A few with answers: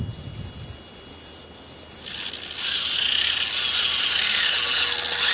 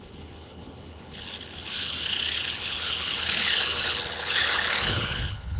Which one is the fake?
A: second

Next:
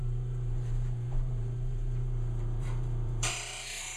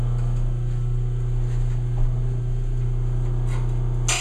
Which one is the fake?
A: first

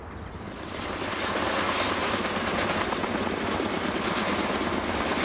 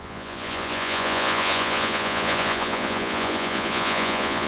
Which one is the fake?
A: second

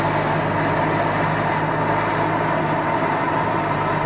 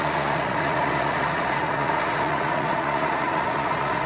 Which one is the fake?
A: second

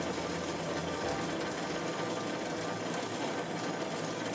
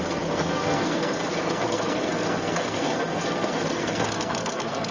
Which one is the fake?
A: second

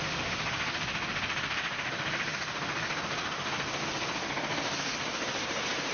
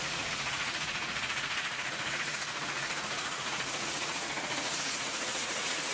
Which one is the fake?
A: second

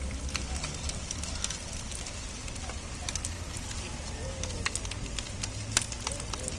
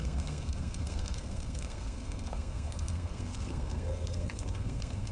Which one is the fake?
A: second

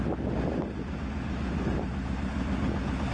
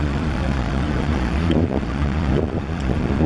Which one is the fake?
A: second